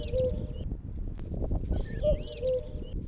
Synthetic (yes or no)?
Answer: no